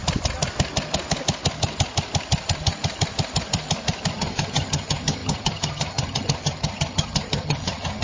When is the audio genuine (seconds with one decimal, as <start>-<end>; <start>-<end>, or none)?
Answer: 0.0-4.1